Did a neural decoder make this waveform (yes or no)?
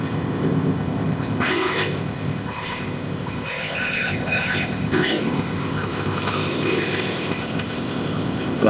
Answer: yes